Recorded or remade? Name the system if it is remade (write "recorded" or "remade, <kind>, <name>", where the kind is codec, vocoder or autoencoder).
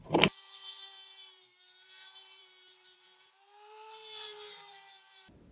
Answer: remade, vocoder, BigVGAN v2